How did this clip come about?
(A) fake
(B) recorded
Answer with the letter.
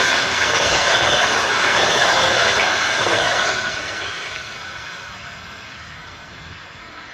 A